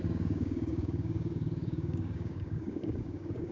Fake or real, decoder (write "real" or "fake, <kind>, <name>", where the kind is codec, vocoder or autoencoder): fake, codec, DAC